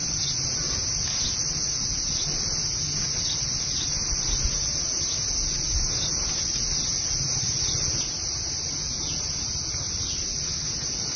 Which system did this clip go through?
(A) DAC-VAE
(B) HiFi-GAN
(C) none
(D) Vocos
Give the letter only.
C